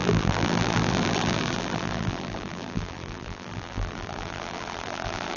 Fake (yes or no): yes